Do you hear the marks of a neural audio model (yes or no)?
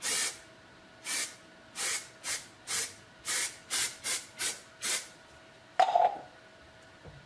yes